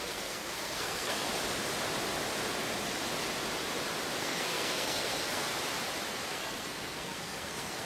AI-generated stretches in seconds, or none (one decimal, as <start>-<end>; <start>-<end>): 0.0-1.3; 4.2-5.5; 6.1-7.9